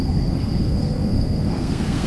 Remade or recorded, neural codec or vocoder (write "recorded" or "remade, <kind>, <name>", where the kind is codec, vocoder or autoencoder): remade, codec, SNAC